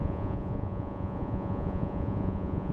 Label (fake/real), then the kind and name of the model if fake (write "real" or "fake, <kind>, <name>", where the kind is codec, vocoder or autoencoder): fake, vocoder, Vocos